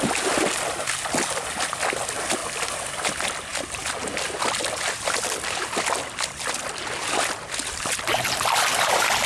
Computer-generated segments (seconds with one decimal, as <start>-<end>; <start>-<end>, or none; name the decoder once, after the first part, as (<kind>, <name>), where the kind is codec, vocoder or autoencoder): none